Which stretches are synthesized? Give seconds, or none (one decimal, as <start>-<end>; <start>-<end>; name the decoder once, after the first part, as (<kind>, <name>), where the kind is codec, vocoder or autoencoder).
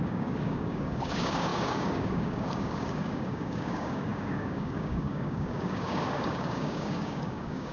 0.0-7.7 (codec, DAC)